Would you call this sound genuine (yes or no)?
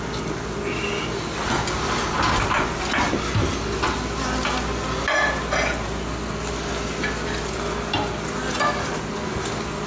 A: yes